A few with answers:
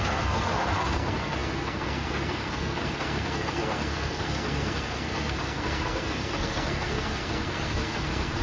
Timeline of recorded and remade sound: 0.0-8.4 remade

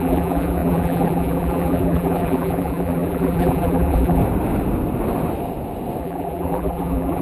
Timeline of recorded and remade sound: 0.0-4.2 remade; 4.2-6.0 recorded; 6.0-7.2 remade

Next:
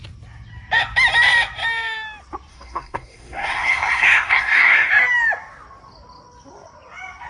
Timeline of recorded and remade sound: 0.0-2.5 recorded; 2.5-4.9 remade; 4.9-7.3 recorded